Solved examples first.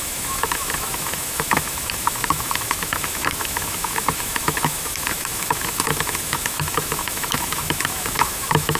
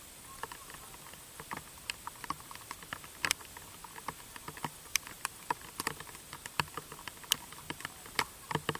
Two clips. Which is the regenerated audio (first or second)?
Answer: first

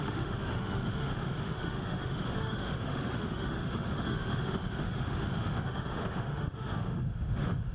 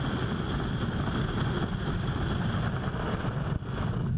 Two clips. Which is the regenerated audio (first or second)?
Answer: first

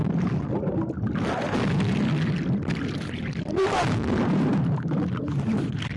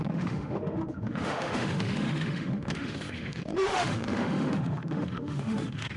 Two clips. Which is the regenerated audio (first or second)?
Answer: second